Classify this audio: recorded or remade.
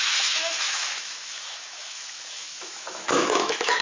remade